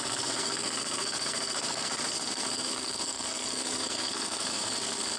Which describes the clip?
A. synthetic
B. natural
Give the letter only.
A